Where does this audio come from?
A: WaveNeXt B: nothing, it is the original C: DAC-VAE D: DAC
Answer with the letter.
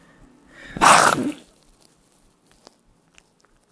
B